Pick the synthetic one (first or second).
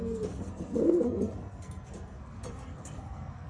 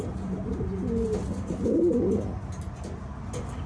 first